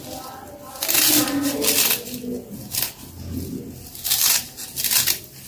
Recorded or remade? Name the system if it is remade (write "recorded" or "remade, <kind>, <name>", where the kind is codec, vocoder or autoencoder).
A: recorded